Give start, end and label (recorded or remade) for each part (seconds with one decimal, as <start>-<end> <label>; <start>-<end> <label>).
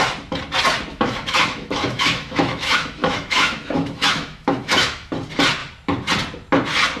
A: 0.0-0.9 recorded; 0.9-5.1 remade; 5.1-7.0 recorded